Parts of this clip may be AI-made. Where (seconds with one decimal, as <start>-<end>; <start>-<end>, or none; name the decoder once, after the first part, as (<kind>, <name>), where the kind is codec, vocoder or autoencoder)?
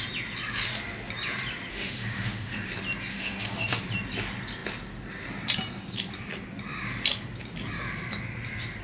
1.7-2.7 (autoencoder, DAC-VAE); 3.1-3.8